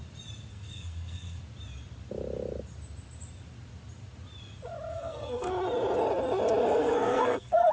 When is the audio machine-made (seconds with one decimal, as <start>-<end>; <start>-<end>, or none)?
0.5-1.4; 4.9-5.5; 6.6-7.7